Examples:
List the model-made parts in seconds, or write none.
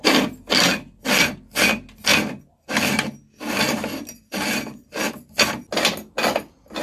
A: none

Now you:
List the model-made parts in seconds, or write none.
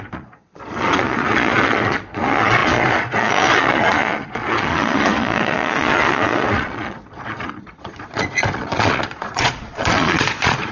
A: 0.0-10.7 (vocoder, Vocos)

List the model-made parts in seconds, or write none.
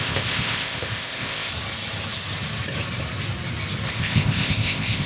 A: 0.0-1.5 (codec, ZipCodec); 3.9-5.1